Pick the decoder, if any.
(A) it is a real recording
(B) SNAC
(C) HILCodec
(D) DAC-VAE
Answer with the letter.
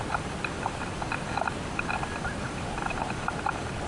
A